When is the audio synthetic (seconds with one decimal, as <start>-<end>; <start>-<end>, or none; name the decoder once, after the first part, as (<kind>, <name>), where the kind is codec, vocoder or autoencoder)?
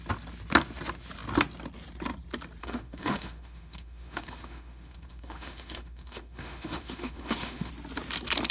2.6-7.7 (autoencoder, DAC-VAE)